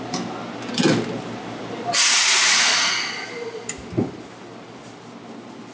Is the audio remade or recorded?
recorded